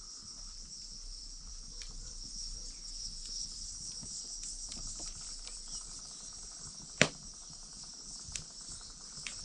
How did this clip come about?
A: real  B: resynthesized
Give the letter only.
B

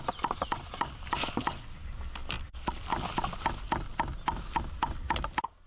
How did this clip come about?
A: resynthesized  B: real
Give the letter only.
B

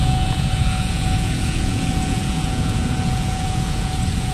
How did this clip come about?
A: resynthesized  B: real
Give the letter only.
A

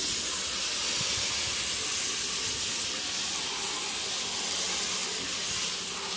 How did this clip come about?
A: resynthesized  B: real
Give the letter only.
B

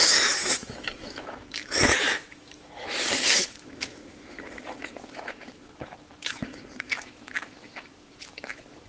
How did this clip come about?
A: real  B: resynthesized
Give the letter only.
B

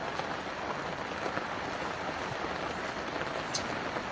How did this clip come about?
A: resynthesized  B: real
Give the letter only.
B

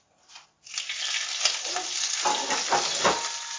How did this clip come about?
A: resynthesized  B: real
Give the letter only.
B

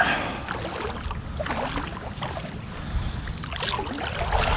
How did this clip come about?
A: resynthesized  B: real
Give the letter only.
B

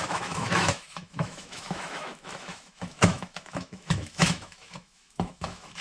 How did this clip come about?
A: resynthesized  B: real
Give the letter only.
A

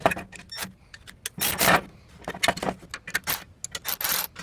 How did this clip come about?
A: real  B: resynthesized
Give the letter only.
A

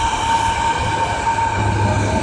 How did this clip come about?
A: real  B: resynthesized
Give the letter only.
A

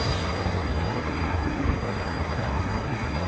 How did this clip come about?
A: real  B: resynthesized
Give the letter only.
B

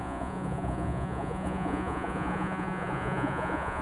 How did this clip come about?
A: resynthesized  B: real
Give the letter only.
A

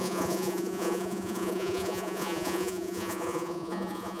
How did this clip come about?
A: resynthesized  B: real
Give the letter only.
A